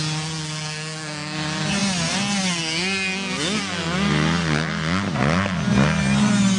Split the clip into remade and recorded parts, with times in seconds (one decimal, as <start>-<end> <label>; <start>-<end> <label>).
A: 0.0-6.6 recorded